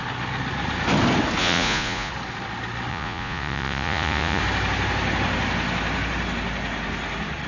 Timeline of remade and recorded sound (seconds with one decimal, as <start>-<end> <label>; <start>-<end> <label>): 0.0-1.4 recorded; 1.4-2.1 remade; 2.1-2.9 recorded; 2.9-4.4 remade; 4.4-7.5 recorded